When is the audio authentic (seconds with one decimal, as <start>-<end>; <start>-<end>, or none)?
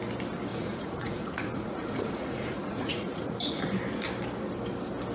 0.0-0.5; 3.6-5.1